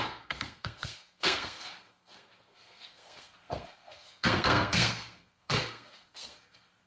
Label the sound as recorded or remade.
remade